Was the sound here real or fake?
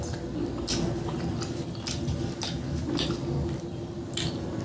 real